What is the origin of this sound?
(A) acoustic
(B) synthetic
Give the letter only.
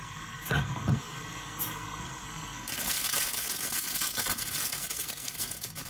B